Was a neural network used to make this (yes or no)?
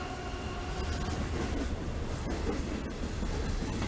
no